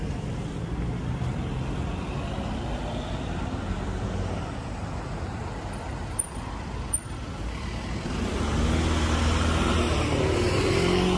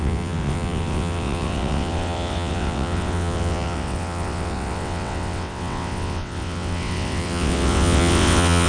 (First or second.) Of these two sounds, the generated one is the second